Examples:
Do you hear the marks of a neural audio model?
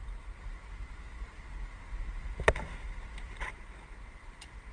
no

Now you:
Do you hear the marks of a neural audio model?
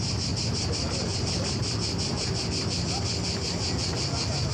no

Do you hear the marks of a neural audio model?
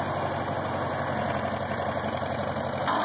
no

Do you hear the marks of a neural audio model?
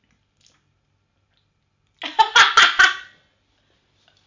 no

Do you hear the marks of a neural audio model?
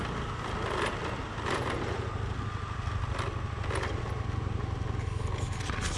no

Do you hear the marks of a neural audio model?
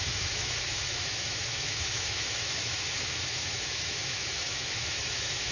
yes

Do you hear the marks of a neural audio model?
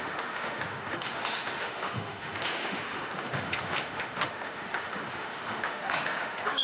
yes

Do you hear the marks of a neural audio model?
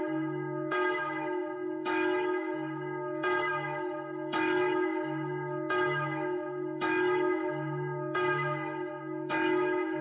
yes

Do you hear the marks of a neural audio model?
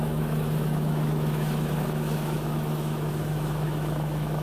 yes